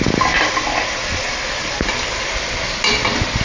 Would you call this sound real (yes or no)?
yes